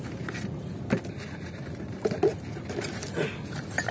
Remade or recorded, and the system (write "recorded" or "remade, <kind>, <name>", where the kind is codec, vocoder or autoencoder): recorded